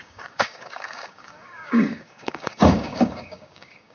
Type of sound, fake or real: fake